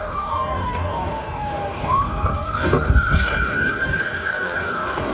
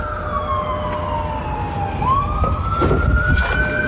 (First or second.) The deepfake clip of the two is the first